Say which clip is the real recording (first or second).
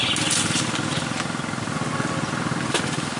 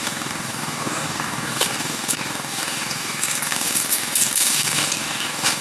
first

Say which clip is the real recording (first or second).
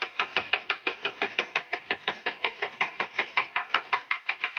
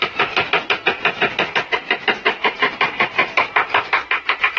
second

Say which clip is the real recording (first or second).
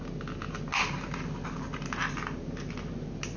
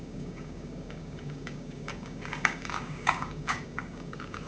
first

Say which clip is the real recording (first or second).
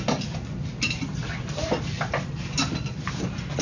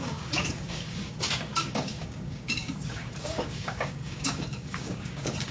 first